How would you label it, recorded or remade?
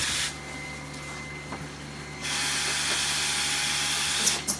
recorded